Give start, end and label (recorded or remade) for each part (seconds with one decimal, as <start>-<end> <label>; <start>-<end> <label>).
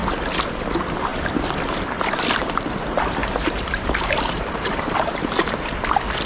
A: 0.0-3.2 recorded; 3.2-5.2 remade; 5.2-6.3 recorded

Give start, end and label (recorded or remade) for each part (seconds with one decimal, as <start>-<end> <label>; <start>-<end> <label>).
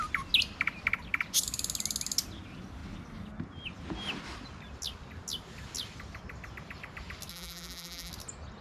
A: 0.0-7.3 recorded; 7.3-8.1 remade; 8.1-8.6 recorded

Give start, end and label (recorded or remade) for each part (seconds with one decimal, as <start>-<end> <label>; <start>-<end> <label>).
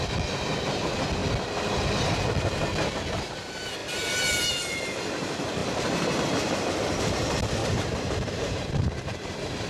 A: 0.0-7.6 recorded; 7.6-9.7 remade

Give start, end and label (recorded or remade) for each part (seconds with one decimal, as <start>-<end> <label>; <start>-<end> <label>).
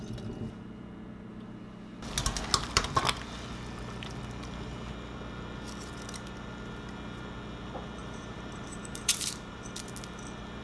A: 0.0-8.0 recorded; 8.0-9.6 remade; 9.6-10.6 recorded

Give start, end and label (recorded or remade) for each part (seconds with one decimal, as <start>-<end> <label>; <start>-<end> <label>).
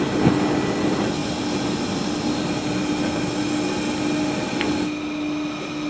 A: 0.0-5.9 recorded